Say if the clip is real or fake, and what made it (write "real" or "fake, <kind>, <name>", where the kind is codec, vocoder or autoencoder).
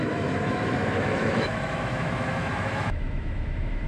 fake, autoencoder, DAC-VAE